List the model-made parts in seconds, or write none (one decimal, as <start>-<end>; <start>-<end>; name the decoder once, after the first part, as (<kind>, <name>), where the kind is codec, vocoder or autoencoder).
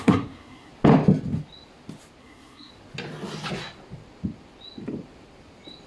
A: 0.0-0.7 (codec, SNAC); 2.2-2.7